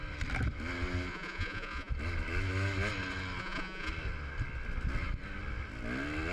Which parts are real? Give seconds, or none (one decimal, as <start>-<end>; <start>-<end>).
0.0-1.1; 1.9-3.4; 3.9-6.3